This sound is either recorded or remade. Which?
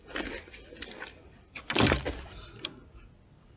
recorded